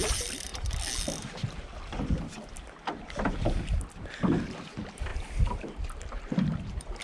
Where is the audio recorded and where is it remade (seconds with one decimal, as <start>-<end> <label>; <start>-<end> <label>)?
0.0-0.5 remade; 0.5-4.1 recorded; 4.1-7.0 remade